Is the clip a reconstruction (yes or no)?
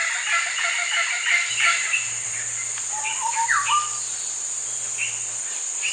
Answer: no